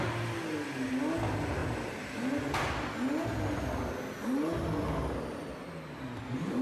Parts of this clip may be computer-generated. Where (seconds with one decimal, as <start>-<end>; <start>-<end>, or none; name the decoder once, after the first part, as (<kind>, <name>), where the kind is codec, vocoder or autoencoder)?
none